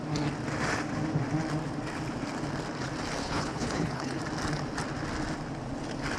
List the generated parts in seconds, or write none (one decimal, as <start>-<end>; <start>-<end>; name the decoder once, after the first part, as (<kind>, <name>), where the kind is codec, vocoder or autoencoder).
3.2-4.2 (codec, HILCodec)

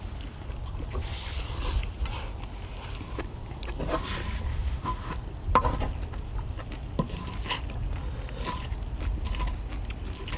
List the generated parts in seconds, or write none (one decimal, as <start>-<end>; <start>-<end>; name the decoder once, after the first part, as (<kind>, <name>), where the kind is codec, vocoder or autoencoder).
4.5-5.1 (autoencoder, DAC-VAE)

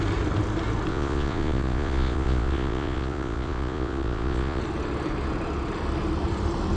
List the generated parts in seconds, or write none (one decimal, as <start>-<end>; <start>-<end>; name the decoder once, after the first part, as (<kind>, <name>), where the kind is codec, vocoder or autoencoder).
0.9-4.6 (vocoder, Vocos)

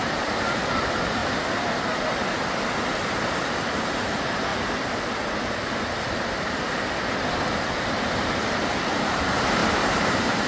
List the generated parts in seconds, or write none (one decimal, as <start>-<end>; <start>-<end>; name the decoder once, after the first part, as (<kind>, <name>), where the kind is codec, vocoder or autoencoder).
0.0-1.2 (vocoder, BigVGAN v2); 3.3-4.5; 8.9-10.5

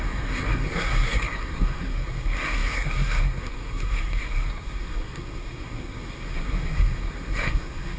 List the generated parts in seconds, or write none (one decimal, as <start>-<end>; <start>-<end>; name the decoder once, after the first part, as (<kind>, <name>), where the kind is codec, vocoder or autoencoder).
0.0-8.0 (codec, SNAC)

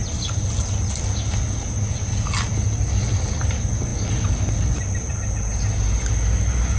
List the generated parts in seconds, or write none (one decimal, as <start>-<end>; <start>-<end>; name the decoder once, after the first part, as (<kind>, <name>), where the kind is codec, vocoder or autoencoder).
none

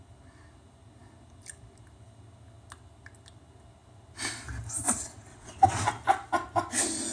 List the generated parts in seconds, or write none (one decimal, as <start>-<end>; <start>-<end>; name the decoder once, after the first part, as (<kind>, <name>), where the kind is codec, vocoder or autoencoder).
5.3-5.9 (vocoder, WaveNeXt)

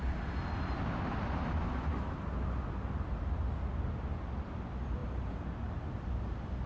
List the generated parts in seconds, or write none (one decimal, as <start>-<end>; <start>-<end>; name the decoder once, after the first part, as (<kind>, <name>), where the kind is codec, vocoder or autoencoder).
none